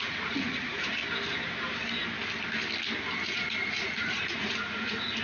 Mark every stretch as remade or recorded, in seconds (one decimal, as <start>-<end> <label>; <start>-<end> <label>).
0.0-1.0 remade; 1.0-3.3 recorded; 3.3-5.2 remade